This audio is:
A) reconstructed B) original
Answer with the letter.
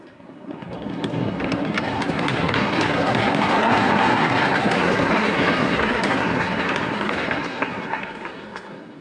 A